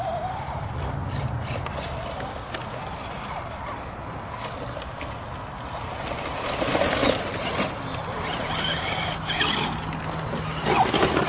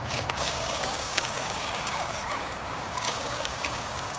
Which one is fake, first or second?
second